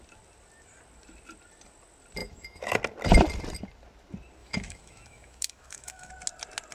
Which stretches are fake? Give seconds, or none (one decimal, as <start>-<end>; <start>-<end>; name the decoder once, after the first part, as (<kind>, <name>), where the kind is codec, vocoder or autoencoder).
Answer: 2.2-2.8 (autoencoder, DAC-VAE); 4.4-6.1

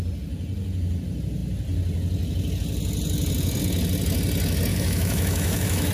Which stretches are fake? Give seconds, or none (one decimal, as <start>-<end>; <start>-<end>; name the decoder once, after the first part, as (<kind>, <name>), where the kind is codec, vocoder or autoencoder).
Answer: 4.7-5.9 (autoencoder, DAC-VAE)

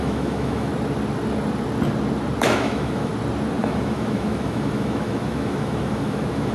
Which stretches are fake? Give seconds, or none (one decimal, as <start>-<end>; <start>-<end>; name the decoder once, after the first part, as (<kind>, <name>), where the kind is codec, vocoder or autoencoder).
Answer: 0.0-0.7 (autoencoder, DAC-VAE); 2.4-3.1; 3.6-6.5

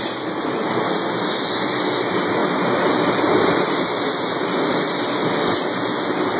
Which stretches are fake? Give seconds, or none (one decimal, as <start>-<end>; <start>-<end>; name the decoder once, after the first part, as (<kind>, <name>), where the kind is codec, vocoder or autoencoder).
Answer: none